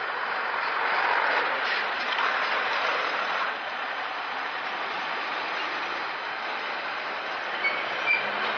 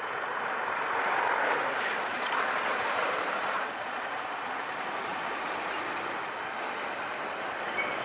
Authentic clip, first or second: first